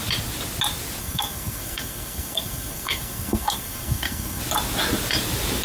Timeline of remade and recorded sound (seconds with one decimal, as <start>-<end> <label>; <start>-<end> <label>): 0.0-1.0 recorded; 1.0-4.4 remade; 4.4-5.6 recorded